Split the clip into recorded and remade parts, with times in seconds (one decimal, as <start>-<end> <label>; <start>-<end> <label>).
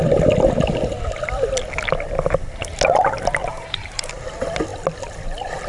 0.0-3.4 recorded; 3.4-4.1 remade; 4.1-5.7 recorded